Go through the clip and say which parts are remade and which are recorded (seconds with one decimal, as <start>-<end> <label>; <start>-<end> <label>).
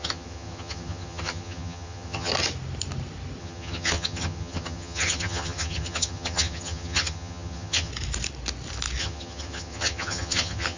0.0-2.3 remade; 2.3-3.4 recorded; 3.4-7.9 remade; 7.9-9.0 recorded; 9.0-10.8 remade